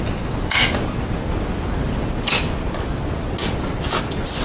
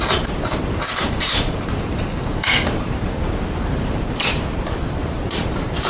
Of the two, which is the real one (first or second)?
first